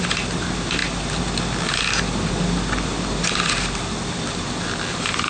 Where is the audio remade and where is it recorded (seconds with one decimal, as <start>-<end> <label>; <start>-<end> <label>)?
0.0-5.3 recorded